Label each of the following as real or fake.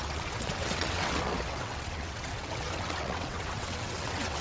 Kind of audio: fake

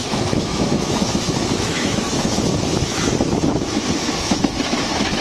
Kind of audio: fake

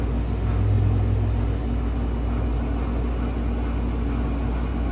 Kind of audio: real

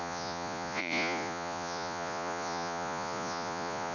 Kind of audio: fake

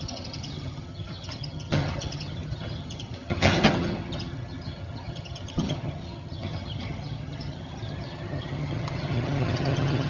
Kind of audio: fake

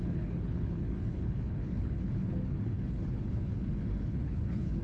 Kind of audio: fake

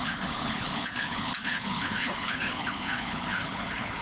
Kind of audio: fake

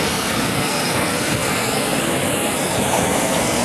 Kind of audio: fake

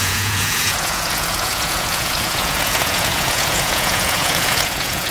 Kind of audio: fake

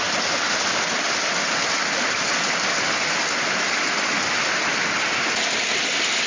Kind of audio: real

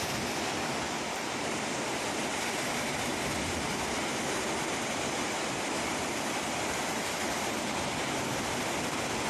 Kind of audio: fake